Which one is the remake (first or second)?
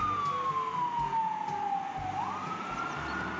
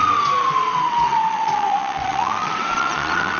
second